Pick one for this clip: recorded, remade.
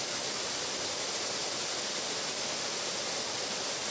recorded